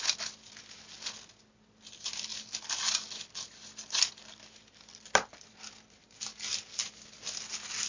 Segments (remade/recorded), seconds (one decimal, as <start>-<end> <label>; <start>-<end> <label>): 0.0-7.9 recorded